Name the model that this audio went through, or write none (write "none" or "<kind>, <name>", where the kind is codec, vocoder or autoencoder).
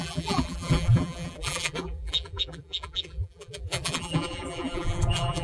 vocoder, BigVGAN v2